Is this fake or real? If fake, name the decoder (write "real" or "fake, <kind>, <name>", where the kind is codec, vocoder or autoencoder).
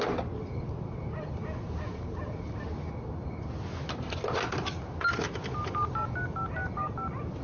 real